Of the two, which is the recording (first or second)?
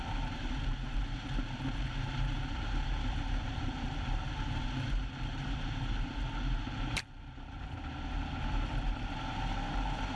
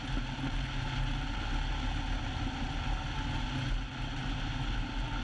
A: second